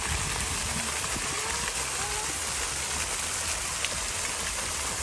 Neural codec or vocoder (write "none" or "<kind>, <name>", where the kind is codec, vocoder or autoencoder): none